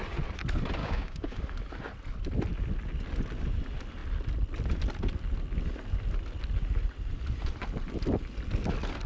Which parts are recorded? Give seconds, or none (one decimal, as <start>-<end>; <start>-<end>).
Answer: 0.0-0.8; 1.4-9.1